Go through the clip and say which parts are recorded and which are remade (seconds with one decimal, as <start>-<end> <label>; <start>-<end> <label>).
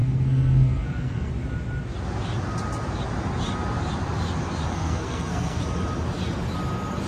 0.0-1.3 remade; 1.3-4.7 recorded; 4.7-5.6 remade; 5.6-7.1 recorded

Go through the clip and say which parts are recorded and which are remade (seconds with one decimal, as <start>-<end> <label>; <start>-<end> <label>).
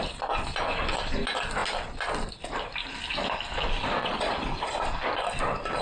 0.0-4.0 recorded; 4.0-4.7 remade; 4.7-5.8 recorded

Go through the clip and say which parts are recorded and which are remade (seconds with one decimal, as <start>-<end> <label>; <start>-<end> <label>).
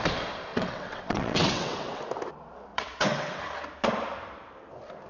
0.0-0.5 recorded; 0.5-2.0 remade; 2.0-2.7 recorded; 2.7-3.4 remade; 3.4-5.1 recorded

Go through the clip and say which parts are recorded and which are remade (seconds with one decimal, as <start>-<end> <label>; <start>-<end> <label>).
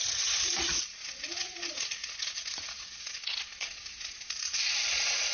0.0-5.3 remade